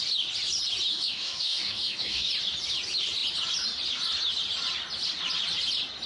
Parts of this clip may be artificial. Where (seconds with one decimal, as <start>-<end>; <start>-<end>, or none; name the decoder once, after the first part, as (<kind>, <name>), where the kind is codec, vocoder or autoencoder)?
0.9-2.3 (codec, DAC)